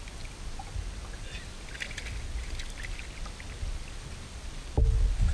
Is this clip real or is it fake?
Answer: real